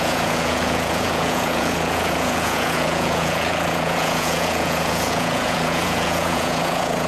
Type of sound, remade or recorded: remade